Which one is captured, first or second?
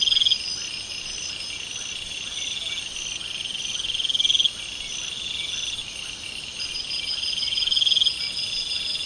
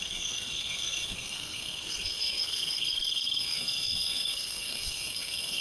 first